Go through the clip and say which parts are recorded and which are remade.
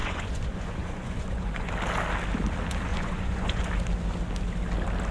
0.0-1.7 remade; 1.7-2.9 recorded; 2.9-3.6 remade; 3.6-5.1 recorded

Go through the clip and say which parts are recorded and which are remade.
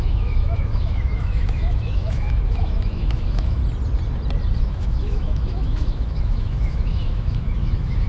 0.0-3.6 remade; 3.6-4.6 recorded; 4.6-8.1 remade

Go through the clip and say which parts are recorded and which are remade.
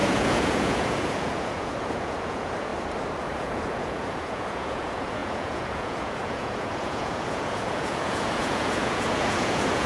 0.0-2.7 remade; 2.7-3.2 recorded; 3.2-9.9 remade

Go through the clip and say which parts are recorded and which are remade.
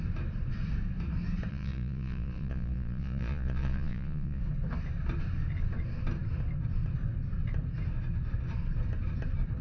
0.0-1.5 recorded; 1.5-4.4 remade; 4.4-9.6 recorded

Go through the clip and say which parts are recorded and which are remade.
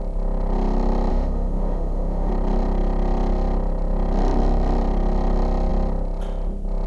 0.0-1.1 recorded; 1.1-2.3 remade; 2.3-6.9 recorded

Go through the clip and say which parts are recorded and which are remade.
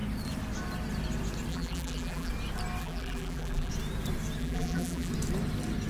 0.0-1.5 recorded; 1.5-2.3 remade; 2.3-2.8 recorded; 2.8-3.7 remade; 3.7-4.4 recorded; 4.4-5.1 remade; 5.1-5.9 recorded